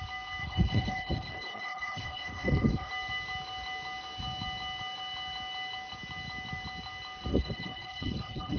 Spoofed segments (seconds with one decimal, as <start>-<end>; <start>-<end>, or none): 0.4-2.9; 7.3-8.6